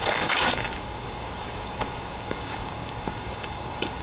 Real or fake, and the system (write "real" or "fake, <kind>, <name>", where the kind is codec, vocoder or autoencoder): fake, codec, DAC